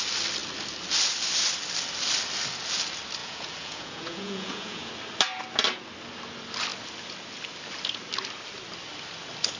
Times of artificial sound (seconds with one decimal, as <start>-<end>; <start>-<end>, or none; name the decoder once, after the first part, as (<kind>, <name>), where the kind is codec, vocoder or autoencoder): 3.2-4.9 (vocoder, Vocos)